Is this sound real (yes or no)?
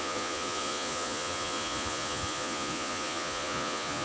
no